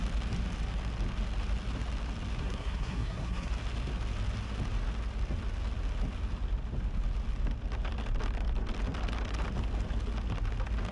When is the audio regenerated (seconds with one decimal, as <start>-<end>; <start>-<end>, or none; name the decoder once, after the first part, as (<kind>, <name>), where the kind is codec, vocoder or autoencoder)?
2.4-3.5 (codec, SNAC)